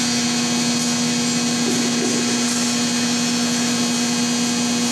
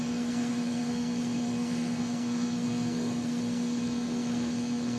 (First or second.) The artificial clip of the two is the second